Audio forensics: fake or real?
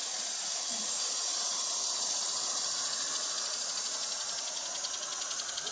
fake